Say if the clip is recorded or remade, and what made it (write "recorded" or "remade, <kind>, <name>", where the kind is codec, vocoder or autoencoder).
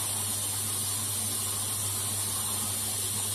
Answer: recorded